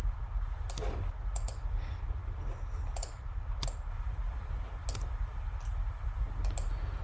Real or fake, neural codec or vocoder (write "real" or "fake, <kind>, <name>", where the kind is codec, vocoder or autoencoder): real